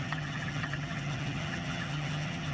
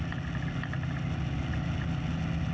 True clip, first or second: second